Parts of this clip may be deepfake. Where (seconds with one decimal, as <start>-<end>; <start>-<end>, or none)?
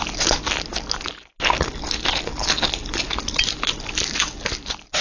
none